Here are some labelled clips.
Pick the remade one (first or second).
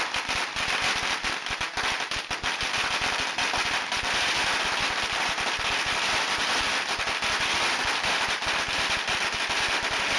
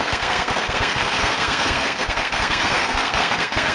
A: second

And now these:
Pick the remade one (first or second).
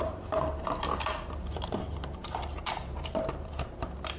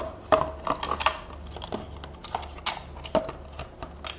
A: first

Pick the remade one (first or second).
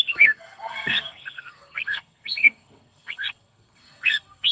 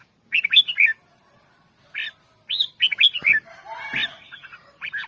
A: first